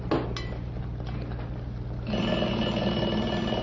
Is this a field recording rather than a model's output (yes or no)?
yes